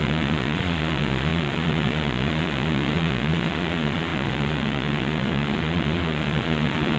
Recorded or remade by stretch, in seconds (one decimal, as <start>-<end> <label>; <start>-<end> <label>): 0.0-7.0 remade